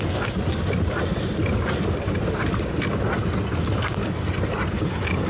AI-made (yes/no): no